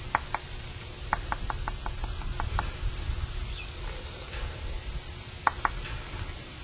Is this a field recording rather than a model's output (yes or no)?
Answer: yes